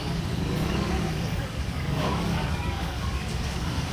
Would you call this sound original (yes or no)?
no